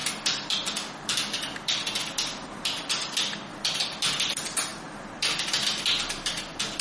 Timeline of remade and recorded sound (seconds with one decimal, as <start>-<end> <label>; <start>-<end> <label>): 0.0-6.8 recorded